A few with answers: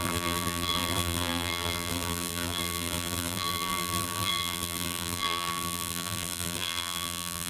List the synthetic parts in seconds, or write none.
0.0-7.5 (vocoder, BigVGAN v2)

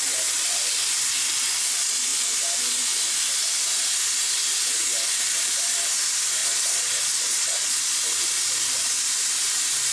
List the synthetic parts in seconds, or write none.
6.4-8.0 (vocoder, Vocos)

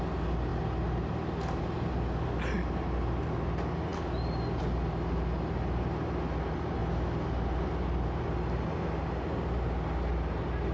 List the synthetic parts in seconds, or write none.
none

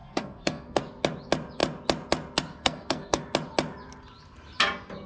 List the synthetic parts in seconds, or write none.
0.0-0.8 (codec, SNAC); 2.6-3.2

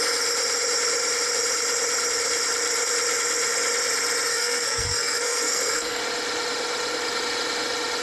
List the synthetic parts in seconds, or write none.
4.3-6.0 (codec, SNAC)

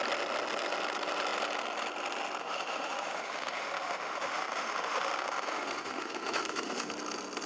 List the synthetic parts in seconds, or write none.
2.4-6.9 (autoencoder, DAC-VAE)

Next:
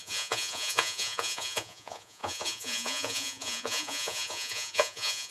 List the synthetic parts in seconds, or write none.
0.0-5.3 (vocoder, Vocos)